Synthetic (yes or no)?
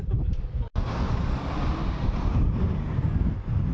no